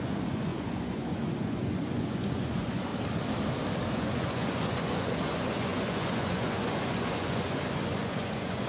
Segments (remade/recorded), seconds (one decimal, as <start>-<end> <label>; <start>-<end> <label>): 0.0-2.9 remade; 2.9-3.9 recorded; 3.9-8.7 remade